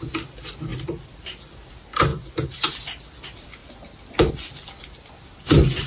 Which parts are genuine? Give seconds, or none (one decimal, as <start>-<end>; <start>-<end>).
0.0-0.7; 1.7-2.1; 2.7-5.9